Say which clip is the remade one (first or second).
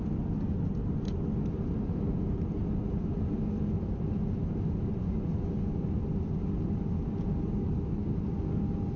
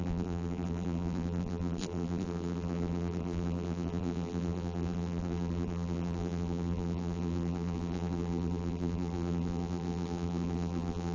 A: second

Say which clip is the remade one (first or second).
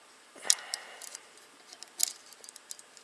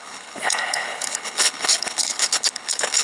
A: second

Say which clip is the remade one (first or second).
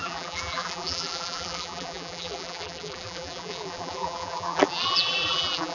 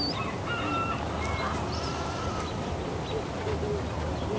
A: first